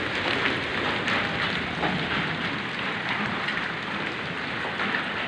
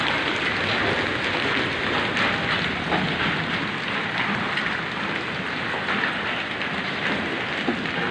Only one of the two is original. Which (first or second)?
second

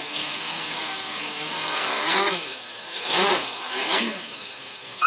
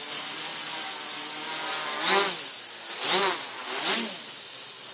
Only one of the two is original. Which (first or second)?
second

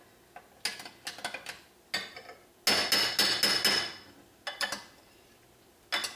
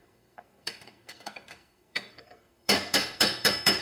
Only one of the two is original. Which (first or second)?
first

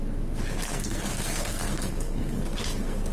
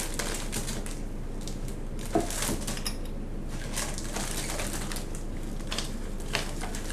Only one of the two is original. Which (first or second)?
second